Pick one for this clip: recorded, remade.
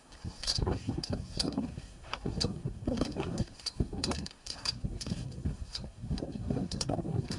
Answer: remade